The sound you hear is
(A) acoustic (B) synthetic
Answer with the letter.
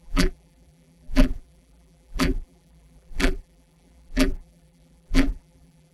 B